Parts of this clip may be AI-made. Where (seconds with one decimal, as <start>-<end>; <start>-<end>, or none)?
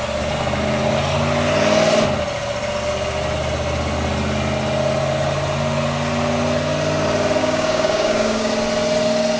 7.4-8.5